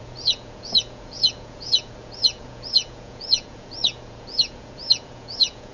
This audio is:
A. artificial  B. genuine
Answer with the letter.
A